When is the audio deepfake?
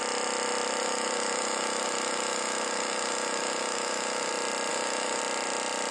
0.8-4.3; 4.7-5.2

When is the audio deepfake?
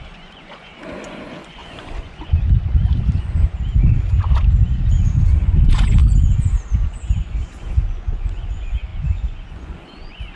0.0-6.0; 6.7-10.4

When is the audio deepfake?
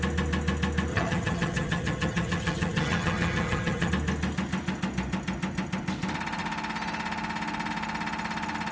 0.9-3.9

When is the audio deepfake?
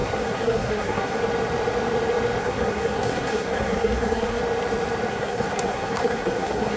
0.0-1.2; 2.4-4.4; 5.1-6.8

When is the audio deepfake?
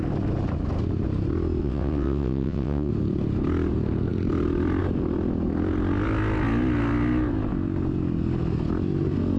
1.6-2.9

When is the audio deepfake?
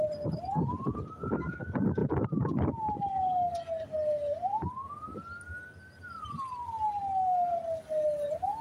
none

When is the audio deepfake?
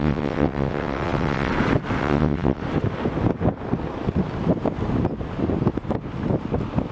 0.0-1.5; 2.0-2.6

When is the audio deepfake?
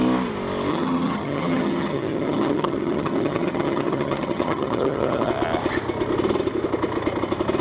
0.7-5.3